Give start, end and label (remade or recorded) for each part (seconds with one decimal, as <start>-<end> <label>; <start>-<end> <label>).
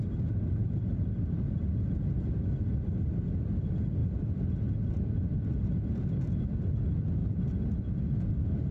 0.0-8.7 recorded